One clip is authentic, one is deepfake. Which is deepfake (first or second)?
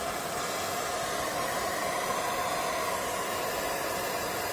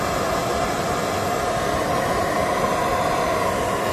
first